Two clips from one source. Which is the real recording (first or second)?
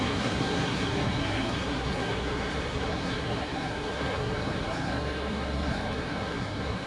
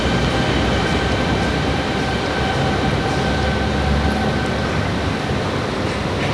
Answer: second